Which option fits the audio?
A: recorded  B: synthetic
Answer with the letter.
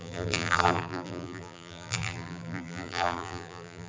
B